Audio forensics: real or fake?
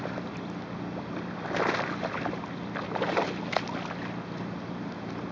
real